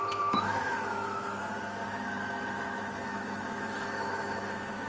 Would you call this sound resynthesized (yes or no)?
yes